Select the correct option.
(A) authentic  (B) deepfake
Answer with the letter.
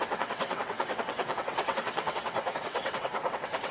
B